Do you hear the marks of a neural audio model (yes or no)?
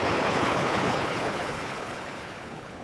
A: yes